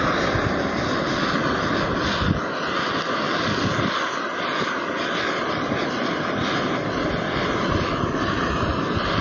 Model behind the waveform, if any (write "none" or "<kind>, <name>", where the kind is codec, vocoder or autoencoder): none